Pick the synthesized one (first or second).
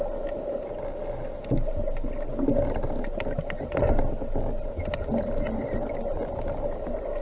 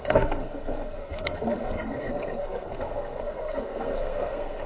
second